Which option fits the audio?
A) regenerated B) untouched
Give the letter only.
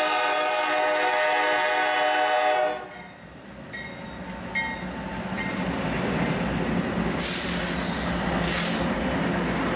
B